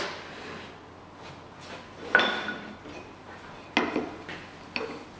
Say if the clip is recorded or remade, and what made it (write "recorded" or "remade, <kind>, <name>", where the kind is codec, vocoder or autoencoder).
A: recorded